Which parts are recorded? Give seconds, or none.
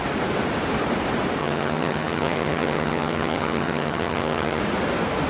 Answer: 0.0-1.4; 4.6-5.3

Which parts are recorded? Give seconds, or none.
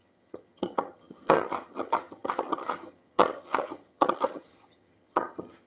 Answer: none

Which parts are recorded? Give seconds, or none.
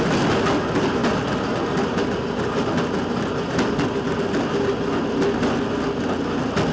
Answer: 0.0-6.7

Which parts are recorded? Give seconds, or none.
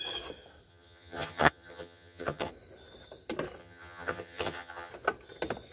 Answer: 0.0-0.7; 2.5-3.6; 4.9-5.7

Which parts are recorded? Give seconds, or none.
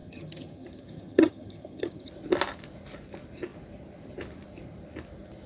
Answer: 2.1-5.5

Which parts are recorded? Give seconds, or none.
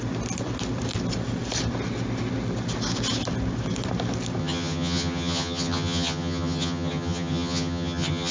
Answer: 0.0-4.4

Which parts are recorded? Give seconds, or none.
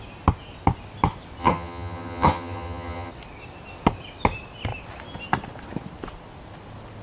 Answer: 0.0-1.4; 3.1-7.0